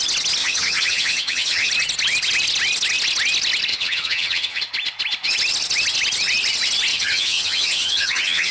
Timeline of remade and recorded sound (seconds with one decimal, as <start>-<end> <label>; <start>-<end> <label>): 0.0-0.4 recorded; 0.4-1.7 remade; 1.7-3.7 recorded; 3.7-4.6 remade; 4.6-6.9 recorded; 6.9-8.5 remade

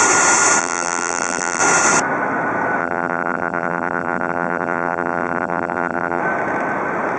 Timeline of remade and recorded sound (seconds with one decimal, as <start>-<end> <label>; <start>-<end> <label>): 0.0-0.6 recorded; 0.6-1.6 remade; 1.6-2.8 recorded; 2.8-6.2 remade; 6.2-7.2 recorded

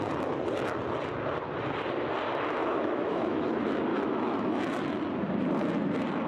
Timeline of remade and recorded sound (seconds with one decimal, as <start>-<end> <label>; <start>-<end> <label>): 0.0-2.6 recorded; 2.6-3.5 remade; 3.5-3.9 recorded; 3.9-4.6 remade; 4.6-6.3 recorded

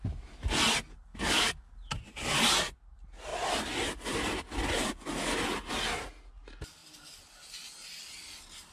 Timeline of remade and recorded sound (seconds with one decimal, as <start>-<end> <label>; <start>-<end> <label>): 0.0-1.1 recorded; 1.1-1.7 remade; 1.7-8.7 recorded

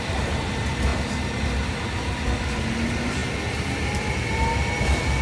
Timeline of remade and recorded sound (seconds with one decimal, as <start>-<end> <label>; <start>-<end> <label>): 0.0-5.2 recorded

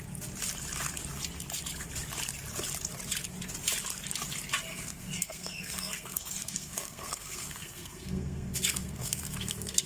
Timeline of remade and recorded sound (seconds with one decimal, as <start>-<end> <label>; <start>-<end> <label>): 0.0-4.7 recorded; 4.7-9.9 remade

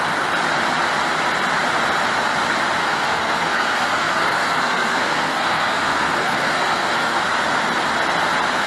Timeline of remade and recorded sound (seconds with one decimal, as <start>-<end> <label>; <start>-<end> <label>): 0.0-2.8 recorded; 2.8-7.2 remade; 7.2-8.7 recorded